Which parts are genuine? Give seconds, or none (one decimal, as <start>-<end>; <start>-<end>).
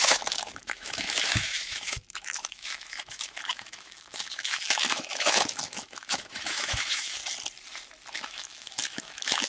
7.2-8.1